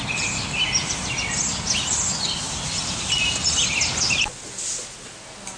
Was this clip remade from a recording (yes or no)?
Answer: no